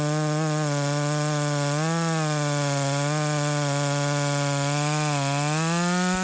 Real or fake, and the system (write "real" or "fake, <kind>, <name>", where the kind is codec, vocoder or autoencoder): real